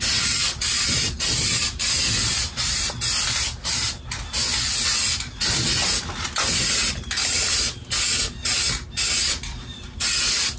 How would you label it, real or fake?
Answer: real